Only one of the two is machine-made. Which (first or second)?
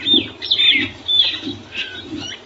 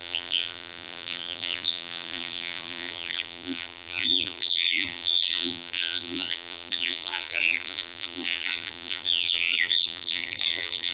second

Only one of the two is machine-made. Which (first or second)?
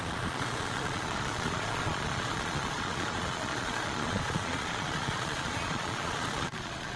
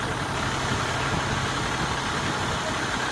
first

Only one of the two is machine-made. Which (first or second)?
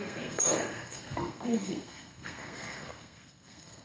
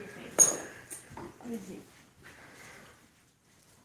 first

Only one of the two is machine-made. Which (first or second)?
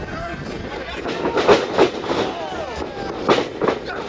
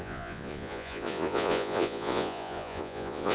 second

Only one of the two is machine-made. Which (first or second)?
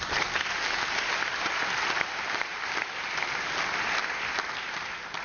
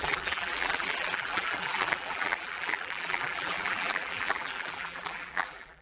second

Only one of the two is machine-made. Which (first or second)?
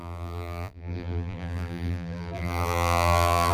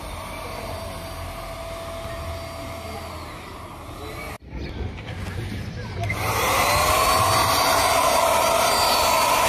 first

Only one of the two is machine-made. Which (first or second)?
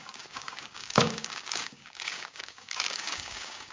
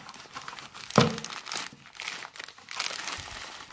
first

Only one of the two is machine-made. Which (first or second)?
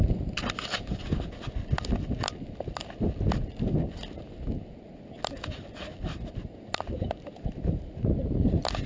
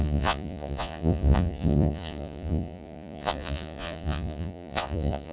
second